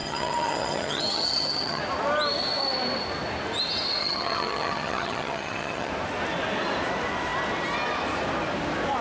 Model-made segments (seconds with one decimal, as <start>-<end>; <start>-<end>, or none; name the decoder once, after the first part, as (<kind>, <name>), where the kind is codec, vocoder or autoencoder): 0.0-1.8 (vocoder, HiFi-GAN); 4.0-5.9